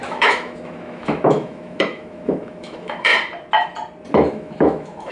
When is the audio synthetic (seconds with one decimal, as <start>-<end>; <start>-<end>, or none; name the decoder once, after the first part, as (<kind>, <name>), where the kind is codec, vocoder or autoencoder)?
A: 0.0-3.1 (autoencoder, DAC-VAE); 4.1-5.1